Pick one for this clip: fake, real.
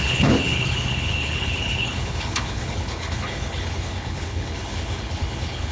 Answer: fake